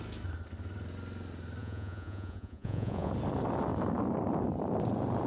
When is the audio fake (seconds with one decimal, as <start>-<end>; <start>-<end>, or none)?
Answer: 1.6-3.1